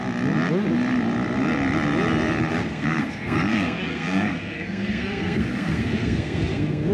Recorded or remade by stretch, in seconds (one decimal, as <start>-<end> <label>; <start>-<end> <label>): 0.0-2.5 recorded; 2.5-6.9 remade